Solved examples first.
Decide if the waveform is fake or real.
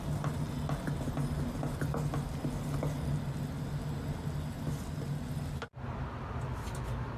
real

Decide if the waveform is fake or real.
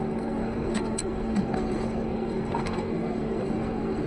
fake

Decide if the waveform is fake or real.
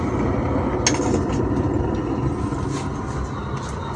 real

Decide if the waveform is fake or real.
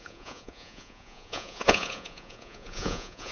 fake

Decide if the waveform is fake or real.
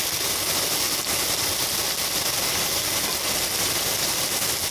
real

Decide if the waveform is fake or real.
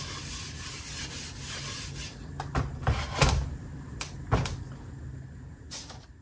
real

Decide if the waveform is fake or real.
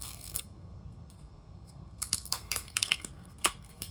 fake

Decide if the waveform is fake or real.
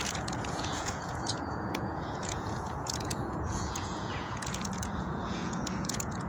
fake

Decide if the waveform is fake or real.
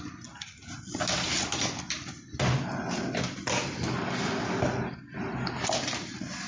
real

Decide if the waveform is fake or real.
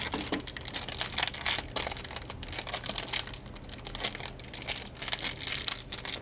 real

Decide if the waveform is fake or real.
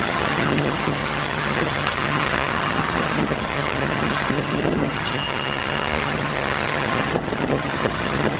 fake